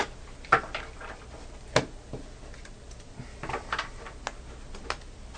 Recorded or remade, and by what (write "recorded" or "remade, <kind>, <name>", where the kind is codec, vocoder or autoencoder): recorded